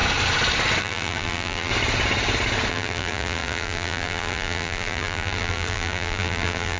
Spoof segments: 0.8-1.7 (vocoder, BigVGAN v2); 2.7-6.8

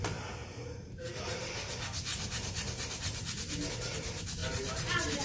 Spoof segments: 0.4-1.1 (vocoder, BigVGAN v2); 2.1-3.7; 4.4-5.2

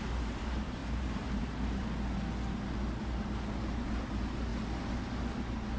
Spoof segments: 0.0-1.8 (vocoder, BigVGAN v2); 3.0-4.5

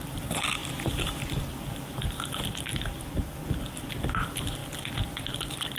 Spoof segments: 0.0-4.6 (vocoder, BigVGAN v2); 5.2-5.8

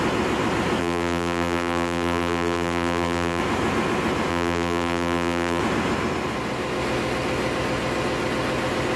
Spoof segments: 0.8-3.4 (vocoder, BigVGAN v2); 4.3-5.6